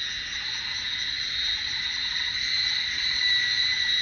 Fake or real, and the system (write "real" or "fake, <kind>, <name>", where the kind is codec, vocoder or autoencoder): real